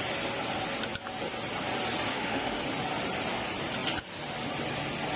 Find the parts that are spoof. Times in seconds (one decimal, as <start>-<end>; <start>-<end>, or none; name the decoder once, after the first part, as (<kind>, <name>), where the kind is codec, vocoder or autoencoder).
2.1-2.6 (autoencoder, DAC-VAE)